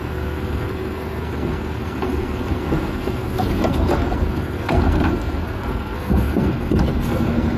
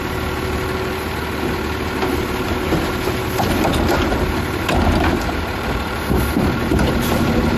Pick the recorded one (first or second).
second